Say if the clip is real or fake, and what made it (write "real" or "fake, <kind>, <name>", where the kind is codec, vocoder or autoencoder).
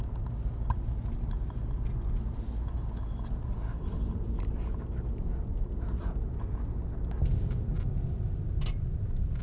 real